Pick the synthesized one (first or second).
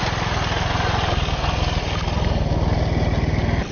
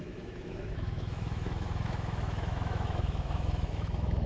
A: second